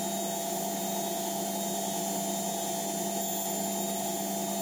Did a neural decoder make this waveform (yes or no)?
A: no